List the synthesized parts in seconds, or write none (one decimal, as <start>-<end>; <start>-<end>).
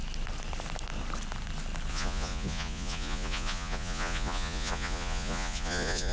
1.9-6.1